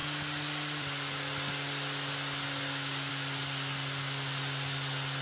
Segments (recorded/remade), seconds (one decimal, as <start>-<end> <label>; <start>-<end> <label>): 0.0-5.2 recorded